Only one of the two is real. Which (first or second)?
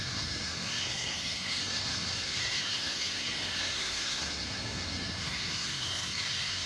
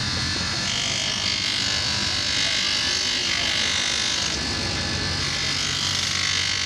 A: second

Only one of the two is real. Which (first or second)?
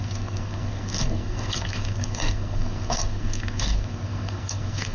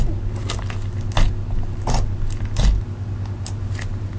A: second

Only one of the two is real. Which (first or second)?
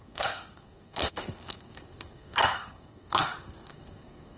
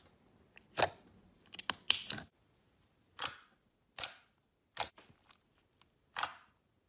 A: second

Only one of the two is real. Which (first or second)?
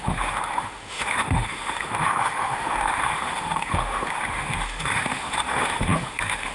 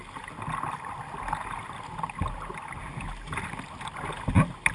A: second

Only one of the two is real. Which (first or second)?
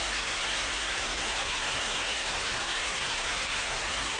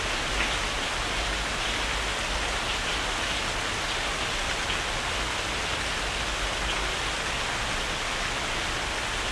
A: second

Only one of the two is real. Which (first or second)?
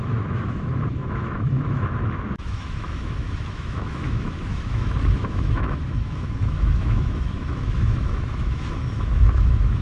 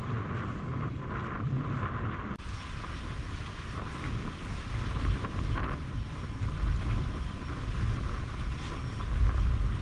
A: second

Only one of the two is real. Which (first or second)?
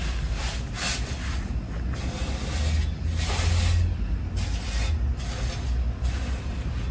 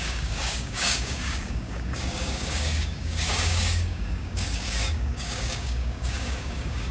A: first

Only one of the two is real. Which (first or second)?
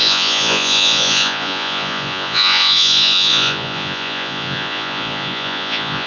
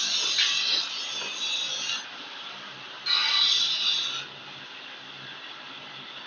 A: second